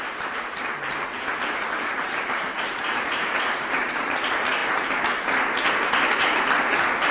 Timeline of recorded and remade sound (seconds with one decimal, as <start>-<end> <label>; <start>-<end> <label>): 0.0-1.9 recorded; 1.9-3.9 remade; 3.9-7.1 recorded